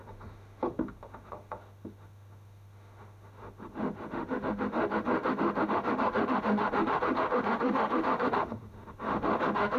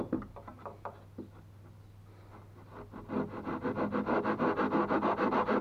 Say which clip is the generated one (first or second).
first